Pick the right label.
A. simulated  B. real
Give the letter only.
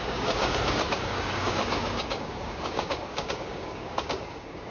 A